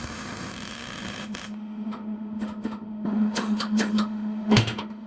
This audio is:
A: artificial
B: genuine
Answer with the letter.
A